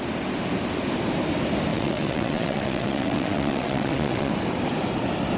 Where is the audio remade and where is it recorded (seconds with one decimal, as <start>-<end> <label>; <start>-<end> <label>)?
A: 0.0-1.7 recorded; 1.7-4.3 remade; 4.3-5.4 recorded